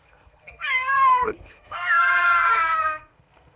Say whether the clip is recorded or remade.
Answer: remade